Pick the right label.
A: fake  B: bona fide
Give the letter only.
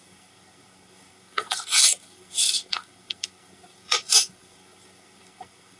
A